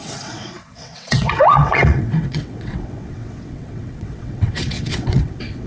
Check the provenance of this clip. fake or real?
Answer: fake